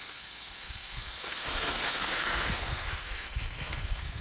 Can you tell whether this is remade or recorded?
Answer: remade